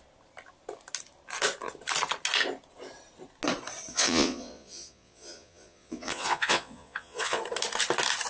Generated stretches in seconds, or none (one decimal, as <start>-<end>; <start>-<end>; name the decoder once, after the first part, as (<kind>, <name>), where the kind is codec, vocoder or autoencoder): 3.9-7.4 (vocoder, Vocos)